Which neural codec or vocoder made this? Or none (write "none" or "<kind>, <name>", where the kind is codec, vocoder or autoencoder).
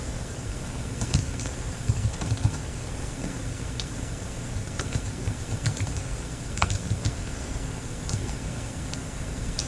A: codec, SNAC